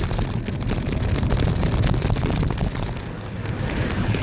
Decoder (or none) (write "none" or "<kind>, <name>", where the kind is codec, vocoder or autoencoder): none